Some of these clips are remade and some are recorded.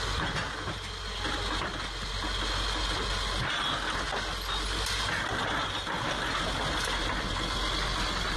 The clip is recorded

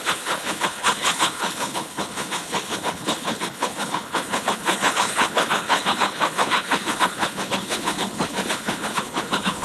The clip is remade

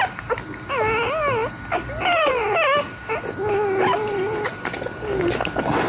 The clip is recorded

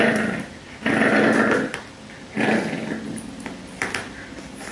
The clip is recorded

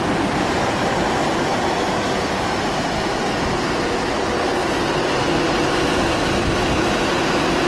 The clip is recorded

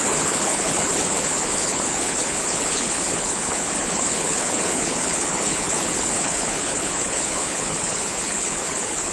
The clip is remade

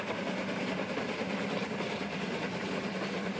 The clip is recorded